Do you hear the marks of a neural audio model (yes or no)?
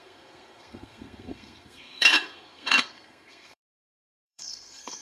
yes